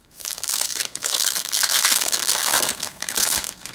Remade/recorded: remade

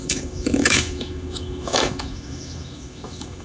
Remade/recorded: remade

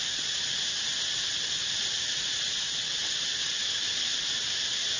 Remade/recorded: recorded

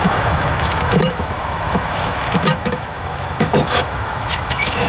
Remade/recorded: remade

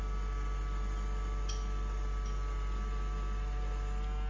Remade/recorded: recorded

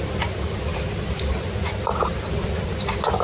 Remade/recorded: recorded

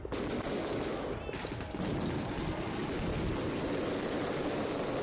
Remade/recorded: recorded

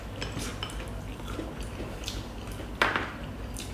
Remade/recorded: recorded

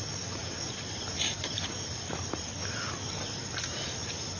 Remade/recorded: remade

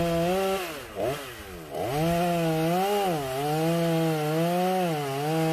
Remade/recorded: recorded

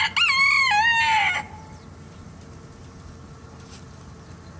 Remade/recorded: recorded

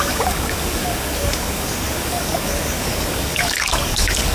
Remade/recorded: remade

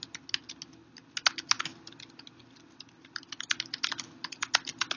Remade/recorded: recorded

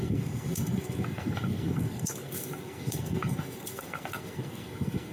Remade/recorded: remade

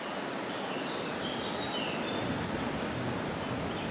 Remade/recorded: recorded